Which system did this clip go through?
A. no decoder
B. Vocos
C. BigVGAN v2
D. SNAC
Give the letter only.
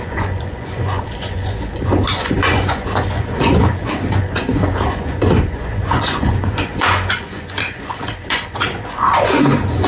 B